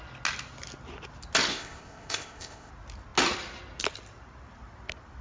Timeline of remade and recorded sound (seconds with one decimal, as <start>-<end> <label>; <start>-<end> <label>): 0.0-1.5 recorded; 1.5-2.7 remade; 2.7-5.2 recorded